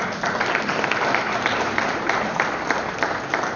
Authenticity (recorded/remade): recorded